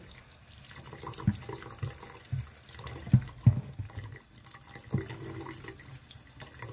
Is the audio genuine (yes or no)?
yes